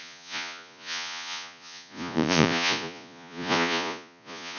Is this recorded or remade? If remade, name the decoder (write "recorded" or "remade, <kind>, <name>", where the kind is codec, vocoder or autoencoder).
remade, vocoder, Vocos